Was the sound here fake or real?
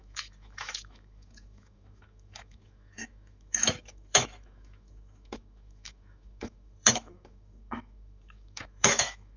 fake